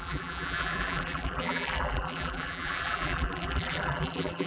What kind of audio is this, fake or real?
fake